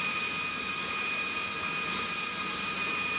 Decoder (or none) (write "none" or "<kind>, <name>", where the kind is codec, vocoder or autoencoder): none